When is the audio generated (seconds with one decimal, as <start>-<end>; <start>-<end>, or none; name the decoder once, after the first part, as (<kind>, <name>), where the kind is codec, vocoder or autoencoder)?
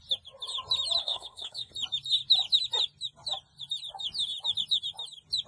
1.0-1.7 (codec, SNAC)